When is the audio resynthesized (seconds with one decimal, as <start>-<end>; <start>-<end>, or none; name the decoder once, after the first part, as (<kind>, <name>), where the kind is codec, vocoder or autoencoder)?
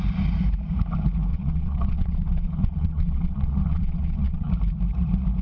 1.3-4.5 (vocoder, WaveNeXt)